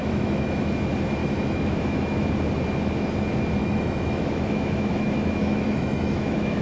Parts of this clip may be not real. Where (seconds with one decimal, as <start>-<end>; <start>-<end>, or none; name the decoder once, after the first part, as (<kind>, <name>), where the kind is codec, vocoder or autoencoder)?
0.0-0.7 (autoencoder, DAC-VAE); 1.2-2.3; 3.6-6.6